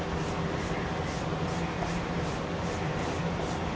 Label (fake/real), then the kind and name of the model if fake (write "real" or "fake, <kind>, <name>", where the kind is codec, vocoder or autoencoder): real